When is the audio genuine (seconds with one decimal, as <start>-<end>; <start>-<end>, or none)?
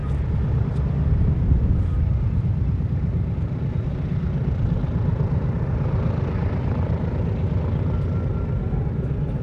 0.0-9.4